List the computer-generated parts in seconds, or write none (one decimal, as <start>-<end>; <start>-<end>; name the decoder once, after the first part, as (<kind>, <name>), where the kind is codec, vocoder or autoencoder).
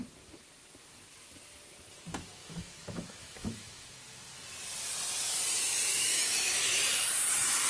2.4-3.9 (autoencoder, DAC-VAE); 5.9-6.8